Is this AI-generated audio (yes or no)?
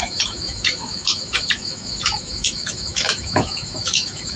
yes